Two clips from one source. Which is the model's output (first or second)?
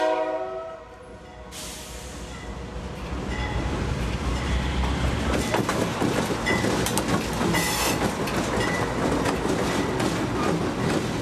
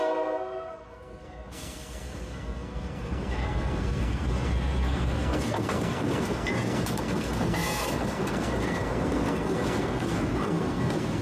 second